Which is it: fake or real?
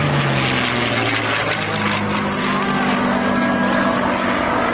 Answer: real